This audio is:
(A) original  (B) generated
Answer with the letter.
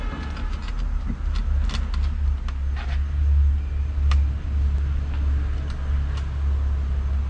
A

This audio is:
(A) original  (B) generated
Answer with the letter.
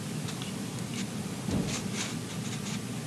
A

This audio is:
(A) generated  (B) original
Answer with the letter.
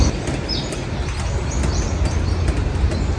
B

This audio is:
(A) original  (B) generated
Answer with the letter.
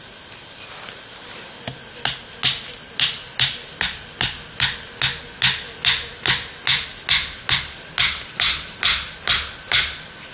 A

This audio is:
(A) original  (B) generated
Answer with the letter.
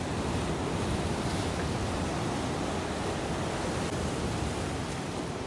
A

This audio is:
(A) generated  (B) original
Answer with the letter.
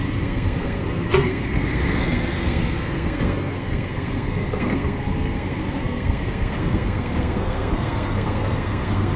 A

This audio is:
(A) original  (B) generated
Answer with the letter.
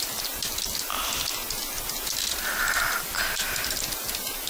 A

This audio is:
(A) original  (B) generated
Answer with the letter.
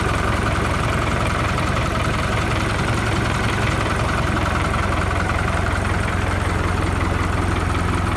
B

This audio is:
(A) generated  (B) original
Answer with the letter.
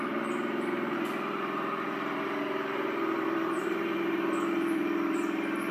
A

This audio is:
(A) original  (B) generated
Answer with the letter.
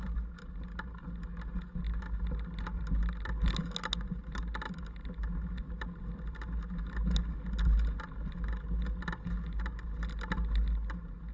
A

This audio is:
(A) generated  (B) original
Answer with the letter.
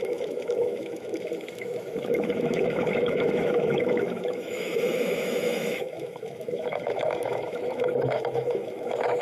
A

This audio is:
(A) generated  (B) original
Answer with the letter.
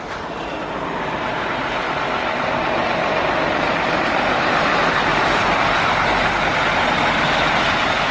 B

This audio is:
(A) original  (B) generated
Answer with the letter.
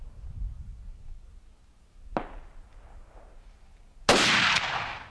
A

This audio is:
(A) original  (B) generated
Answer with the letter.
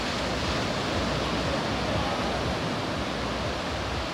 A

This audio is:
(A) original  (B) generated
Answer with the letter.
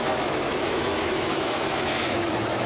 B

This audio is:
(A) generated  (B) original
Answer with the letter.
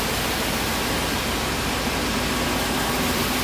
B